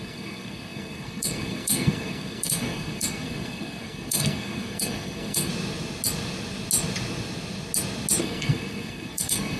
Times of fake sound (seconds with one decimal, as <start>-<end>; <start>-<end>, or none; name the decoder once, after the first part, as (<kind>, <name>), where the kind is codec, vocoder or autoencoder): 0.0-5.5 (codec, SNAC); 8.2-9.6